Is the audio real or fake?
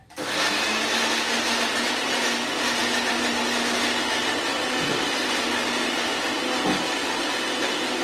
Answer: real